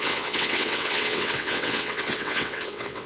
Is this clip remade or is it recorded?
remade